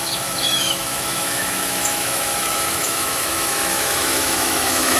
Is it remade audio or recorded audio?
remade